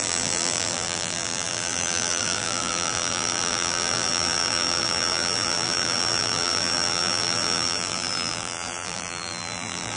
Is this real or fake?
fake